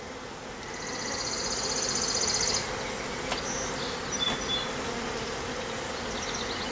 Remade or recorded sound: recorded